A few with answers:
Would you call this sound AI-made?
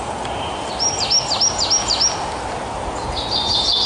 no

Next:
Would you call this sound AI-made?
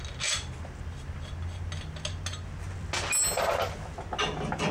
no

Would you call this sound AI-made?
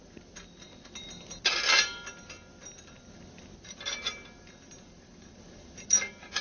no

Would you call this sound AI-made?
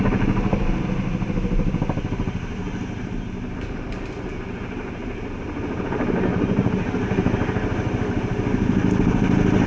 no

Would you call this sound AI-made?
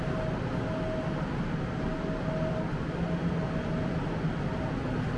no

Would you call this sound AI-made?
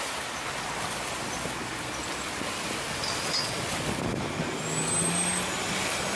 no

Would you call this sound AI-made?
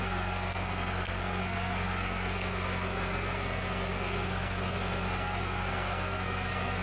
yes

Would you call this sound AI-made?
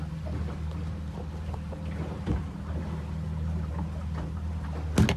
no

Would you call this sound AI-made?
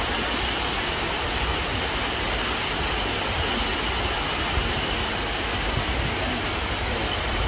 no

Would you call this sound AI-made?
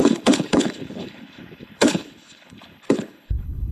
yes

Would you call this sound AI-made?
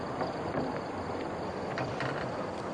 yes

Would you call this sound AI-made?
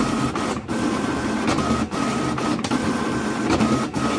no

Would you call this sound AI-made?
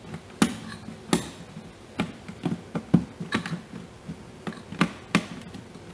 no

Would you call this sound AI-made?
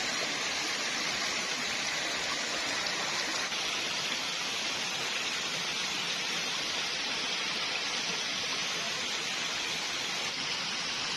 yes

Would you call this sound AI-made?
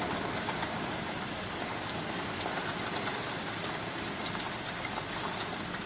no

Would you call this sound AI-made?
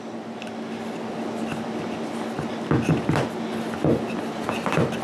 no